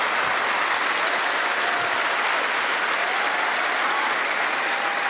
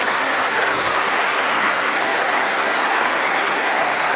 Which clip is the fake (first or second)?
second